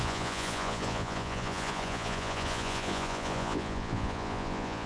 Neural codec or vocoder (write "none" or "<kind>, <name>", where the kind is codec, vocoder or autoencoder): vocoder, Vocos